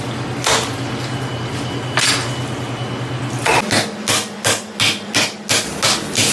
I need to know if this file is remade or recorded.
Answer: recorded